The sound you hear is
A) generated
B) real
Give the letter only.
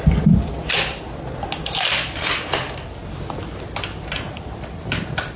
B